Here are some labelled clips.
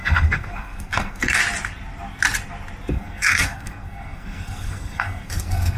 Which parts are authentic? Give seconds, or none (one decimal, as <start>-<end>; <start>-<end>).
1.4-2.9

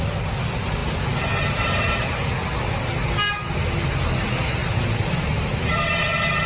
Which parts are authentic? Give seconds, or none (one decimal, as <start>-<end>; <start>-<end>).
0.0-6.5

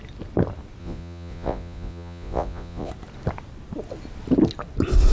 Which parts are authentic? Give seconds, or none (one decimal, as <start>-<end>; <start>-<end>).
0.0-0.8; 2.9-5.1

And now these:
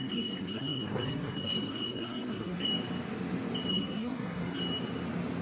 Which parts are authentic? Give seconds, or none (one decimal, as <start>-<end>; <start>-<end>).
2.7-3.7; 4.6-5.4

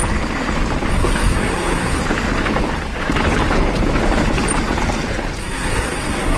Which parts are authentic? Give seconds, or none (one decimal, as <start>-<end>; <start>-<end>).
0.0-0.9; 2.0-5.4